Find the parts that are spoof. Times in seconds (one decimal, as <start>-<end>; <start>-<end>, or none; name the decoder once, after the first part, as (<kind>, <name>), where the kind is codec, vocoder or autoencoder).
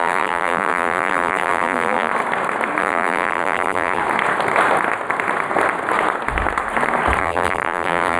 0.0-2.1 (vocoder, BigVGAN v2); 2.8-4.0; 7.2-8.2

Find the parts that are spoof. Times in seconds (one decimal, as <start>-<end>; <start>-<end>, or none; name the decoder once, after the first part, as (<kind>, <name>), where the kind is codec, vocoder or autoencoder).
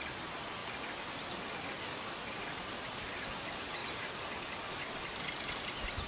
none